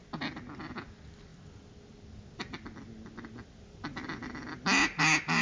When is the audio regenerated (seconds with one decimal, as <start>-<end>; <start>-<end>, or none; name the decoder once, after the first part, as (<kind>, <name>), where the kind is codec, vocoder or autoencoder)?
none